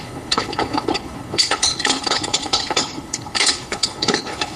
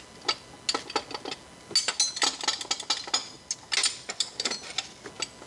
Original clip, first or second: second